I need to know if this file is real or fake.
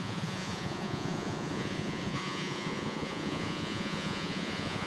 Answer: fake